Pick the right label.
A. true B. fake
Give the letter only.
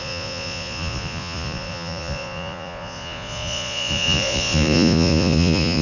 B